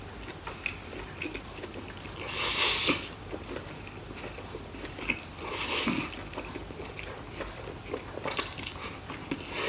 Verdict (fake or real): real